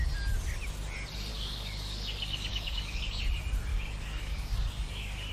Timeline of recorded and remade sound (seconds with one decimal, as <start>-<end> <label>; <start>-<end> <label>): 0.0-1.3 recorded; 1.3-3.2 remade; 3.2-3.7 recorded; 3.7-5.3 remade